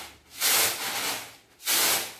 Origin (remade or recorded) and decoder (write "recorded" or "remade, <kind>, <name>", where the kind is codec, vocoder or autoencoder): recorded